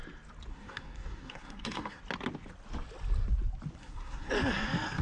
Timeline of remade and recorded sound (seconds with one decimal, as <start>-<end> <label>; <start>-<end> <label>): 0.0-0.5 recorded; 0.5-2.0 remade; 2.0-3.8 recorded; 3.8-4.3 remade; 4.3-5.0 recorded

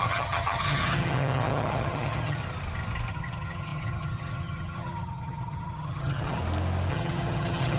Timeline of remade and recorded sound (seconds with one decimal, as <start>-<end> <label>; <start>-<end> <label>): 0.0-2.4 remade; 2.4-3.1 recorded; 3.1-6.4 remade; 6.4-6.9 recorded; 6.9-7.8 remade

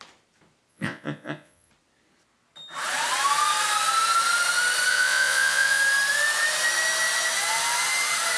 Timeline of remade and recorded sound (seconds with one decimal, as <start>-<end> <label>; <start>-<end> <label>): 0.0-0.7 recorded; 0.7-1.7 remade; 1.7-4.9 recorded; 4.9-5.8 remade; 5.8-8.4 recorded

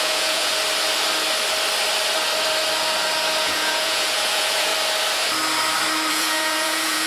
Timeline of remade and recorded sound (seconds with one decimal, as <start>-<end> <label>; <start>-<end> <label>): 0.0-0.5 remade; 0.5-3.4 recorded; 3.4-4.7 remade; 4.7-6.1 recorded; 6.1-7.1 remade

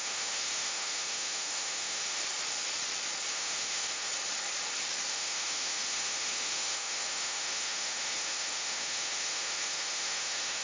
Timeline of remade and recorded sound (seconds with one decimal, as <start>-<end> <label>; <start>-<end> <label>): 0.0-2.2 remade; 2.2-3.3 recorded; 3.3-4.1 remade; 4.1-5.1 recorded; 5.1-10.6 remade

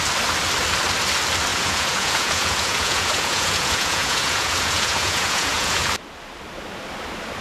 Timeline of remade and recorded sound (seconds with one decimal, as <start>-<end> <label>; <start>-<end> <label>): 0.0-1.5 recorded; 1.5-5.9 remade; 5.9-7.4 recorded

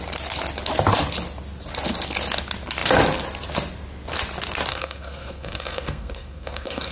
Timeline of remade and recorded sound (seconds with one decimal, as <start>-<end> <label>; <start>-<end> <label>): 0.0-4.7 recorded; 4.7-6.9 remade